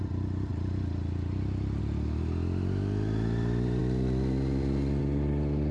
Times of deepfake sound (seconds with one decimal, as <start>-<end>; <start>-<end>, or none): none